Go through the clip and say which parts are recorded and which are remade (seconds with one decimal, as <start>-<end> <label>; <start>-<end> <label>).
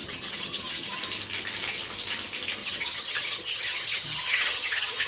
0.0-1.0 remade; 1.0-2.6 recorded; 2.6-5.1 remade